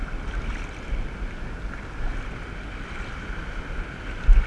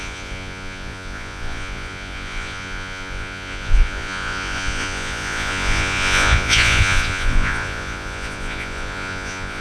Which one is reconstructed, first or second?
second